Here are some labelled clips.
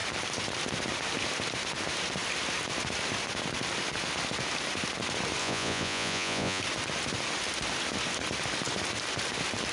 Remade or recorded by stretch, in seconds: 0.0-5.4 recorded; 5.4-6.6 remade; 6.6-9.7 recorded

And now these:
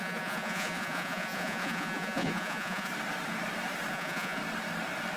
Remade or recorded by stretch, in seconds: 0.0-2.9 remade; 2.9-3.9 recorded; 3.9-4.4 remade; 4.4-5.2 recorded

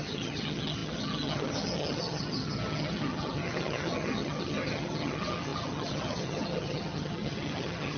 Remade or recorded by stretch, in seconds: 0.0-8.0 remade

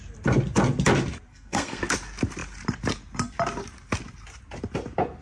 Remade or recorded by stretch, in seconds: 0.0-1.3 recorded; 1.3-1.8 remade; 1.8-5.2 recorded

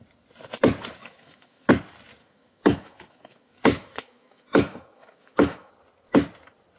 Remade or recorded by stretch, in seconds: 0.0-1.0 recorded; 1.0-1.7 remade; 1.7-2.2 recorded; 2.2-5.7 remade; 5.7-6.8 recorded